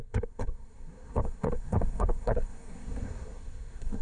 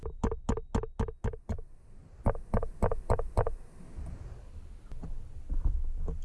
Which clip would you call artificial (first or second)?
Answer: first